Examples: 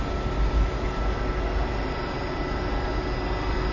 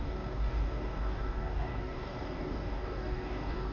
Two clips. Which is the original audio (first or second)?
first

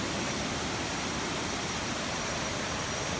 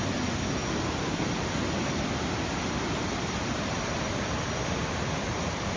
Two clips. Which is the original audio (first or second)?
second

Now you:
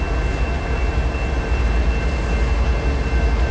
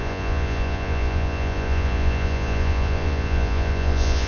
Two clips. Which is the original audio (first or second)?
first